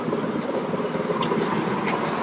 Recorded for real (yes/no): yes